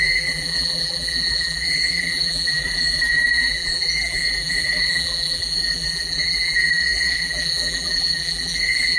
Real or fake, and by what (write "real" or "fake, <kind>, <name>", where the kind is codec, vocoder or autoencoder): fake, vocoder, BigVGAN v2